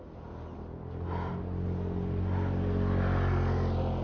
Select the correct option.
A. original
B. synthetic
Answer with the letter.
A